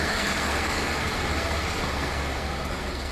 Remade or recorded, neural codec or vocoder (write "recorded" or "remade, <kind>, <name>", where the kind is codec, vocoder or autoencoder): remade, codec, SNAC